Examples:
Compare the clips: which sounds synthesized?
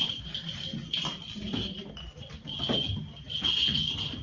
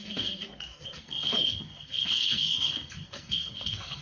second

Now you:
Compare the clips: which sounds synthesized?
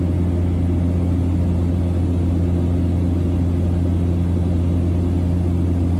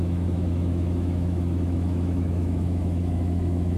second